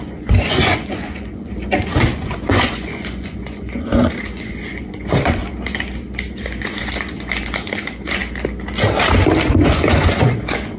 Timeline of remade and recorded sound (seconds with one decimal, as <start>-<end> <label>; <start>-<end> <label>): 0.0-1.5 remade; 1.5-2.0 recorded; 2.0-5.4 remade; 5.4-6.4 recorded; 6.4-8.2 remade; 8.2-9.5 recorded; 9.5-10.8 remade